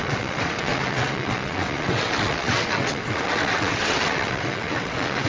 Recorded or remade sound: remade